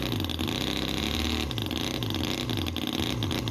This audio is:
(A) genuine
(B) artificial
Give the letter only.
A